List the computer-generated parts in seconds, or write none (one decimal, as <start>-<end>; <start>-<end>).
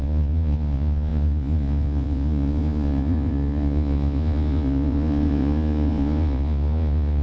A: 0.0-7.2